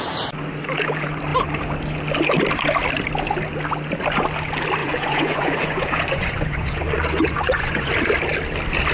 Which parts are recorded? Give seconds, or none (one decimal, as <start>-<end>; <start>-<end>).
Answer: 0.0-4.8; 7.9-8.9